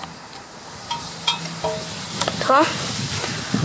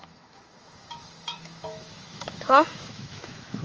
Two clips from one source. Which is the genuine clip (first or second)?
first